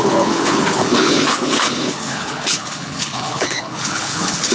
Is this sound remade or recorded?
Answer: remade